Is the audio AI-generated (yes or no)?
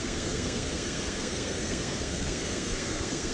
yes